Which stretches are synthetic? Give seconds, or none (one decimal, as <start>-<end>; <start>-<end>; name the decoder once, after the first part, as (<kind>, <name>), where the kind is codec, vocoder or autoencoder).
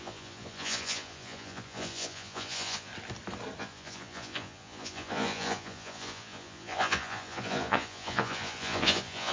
0.0-2.9 (vocoder, Vocos); 3.6-9.3